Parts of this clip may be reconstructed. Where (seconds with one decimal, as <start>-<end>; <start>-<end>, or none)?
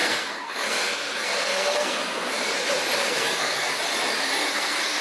0.0-2.5; 3.0-3.8; 4.4-5.0